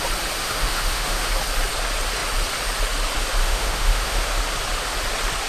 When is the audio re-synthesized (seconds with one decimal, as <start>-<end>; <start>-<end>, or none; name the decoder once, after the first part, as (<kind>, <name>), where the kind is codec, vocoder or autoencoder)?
0.4-1.3 (autoencoder, DAC-VAE); 3.4-4.4